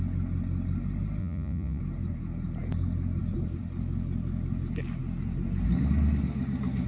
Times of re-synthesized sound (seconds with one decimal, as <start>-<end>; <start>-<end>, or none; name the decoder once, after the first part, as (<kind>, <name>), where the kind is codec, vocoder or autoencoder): 1.2-1.8 (vocoder, Vocos)